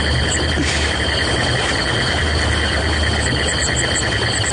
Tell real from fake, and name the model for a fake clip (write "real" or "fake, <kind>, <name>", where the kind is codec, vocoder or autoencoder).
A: real